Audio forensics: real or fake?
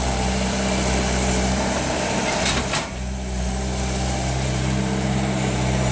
fake